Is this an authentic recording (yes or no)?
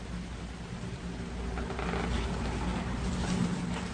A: yes